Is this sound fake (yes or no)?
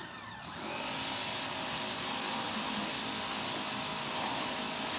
no